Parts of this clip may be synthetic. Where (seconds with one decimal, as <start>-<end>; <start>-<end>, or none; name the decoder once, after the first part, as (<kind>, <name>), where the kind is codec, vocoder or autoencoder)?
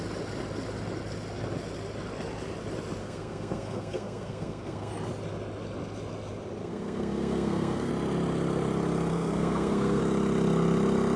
3.0-4.9 (codec, SNAC); 6.6-7.9; 9.1-10.0